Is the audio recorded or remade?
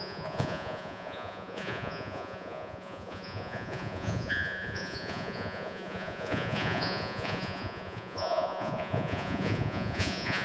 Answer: remade